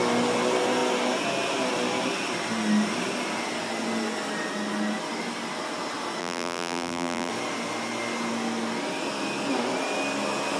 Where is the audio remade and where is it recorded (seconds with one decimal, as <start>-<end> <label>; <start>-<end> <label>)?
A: 0.0-6.2 recorded; 6.2-7.3 remade; 7.3-10.6 recorded